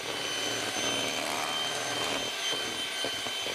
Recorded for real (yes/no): yes